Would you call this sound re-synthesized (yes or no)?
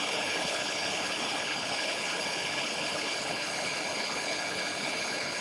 yes